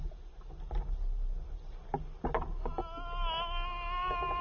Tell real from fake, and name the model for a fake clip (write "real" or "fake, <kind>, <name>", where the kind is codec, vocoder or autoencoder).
real